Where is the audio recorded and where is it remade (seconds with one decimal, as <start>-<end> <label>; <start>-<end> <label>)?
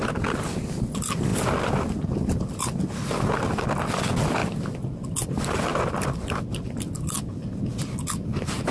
0.0-8.7 recorded